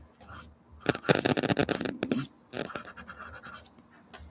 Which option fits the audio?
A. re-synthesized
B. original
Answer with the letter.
B